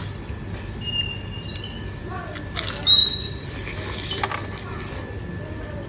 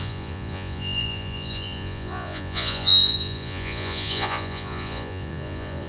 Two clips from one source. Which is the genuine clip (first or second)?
first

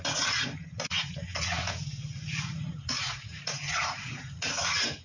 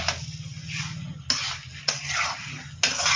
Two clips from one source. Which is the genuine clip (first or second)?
second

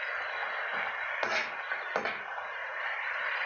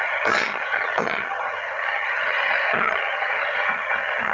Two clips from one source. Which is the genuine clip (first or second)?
first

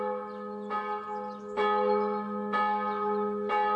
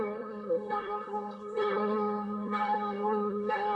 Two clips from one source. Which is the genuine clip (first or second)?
first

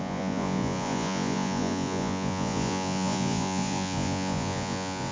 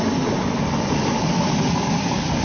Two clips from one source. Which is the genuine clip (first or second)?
second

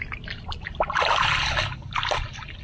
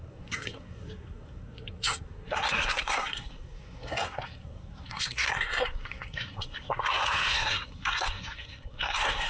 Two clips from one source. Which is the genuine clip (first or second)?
first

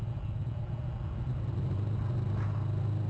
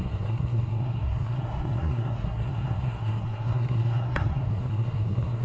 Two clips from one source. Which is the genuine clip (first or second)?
first